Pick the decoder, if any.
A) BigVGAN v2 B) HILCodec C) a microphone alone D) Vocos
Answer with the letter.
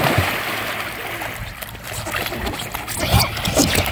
C